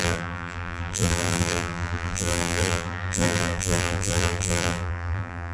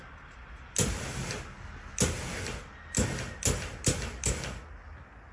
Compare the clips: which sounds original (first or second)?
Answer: second